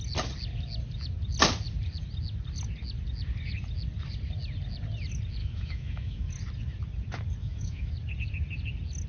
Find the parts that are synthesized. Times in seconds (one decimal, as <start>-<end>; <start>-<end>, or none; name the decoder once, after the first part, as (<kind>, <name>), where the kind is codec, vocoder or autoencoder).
5.4-6.3 (autoencoder, DAC-VAE); 7.4-7.9

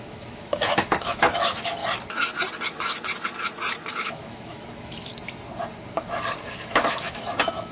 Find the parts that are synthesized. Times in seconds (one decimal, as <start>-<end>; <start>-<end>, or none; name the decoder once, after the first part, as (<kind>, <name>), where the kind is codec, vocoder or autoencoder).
0.0-1.8 (autoencoder, DAC-VAE); 3.9-5.1; 6.5-7.7

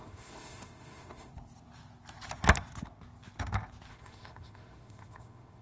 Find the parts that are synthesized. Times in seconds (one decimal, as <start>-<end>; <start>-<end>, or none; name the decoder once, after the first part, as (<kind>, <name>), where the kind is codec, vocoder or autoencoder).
0.0-1.3 (autoencoder, DAC-VAE); 3.9-5.6

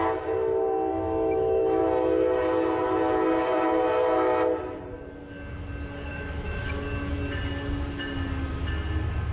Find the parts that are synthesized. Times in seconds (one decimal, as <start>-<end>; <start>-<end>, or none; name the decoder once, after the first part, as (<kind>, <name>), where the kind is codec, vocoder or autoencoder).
0.9-1.8 (autoencoder, DAC-VAE); 6.1-6.7

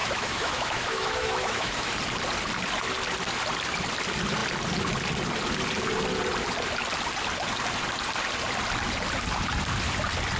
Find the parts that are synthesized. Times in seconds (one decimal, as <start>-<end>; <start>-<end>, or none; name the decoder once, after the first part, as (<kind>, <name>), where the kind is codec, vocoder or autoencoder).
0.0-1.9 (autoencoder, DAC-VAE)